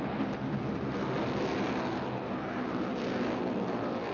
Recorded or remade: recorded